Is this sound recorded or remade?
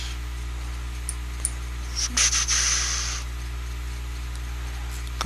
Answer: recorded